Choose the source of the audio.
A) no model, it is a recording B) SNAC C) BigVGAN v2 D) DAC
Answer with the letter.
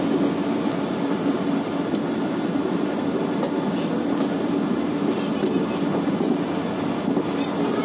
A